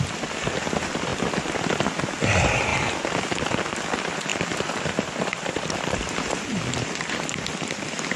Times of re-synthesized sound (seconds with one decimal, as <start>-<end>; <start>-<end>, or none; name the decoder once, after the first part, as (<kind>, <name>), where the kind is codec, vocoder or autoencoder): 4.3-8.2 (vocoder, BigVGAN v2)